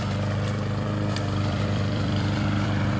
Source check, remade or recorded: remade